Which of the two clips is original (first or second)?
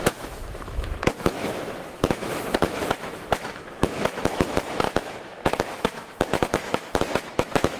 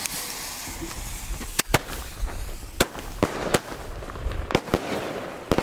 second